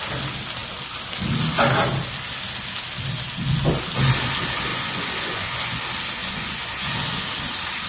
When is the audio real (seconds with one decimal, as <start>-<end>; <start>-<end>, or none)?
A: 0.0-4.7; 5.8-6.2; 7.2-7.9